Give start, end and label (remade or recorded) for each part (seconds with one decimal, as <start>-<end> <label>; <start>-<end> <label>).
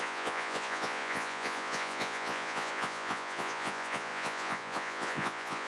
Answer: 0.0-5.7 remade